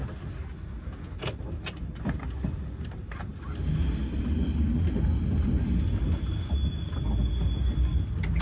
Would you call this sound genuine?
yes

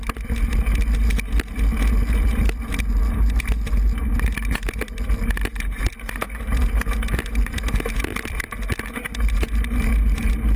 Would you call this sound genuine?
yes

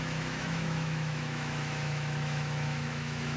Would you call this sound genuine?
no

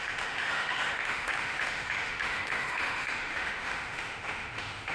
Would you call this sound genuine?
no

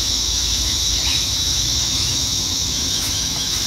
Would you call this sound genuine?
no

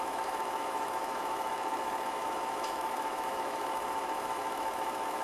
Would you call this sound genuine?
no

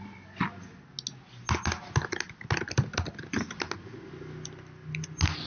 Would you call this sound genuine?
yes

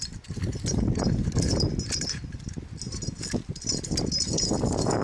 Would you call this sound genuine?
yes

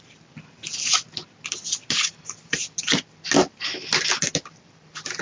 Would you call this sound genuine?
yes